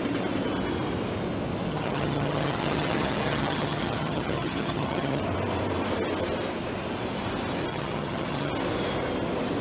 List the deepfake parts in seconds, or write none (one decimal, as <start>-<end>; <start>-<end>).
1.7-5.2; 7.7-8.5